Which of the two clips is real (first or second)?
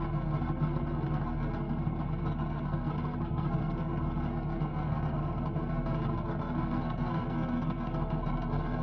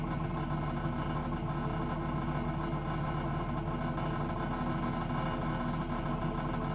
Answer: second